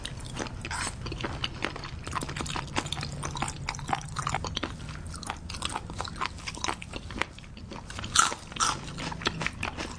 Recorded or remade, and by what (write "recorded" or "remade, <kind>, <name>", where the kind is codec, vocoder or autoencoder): recorded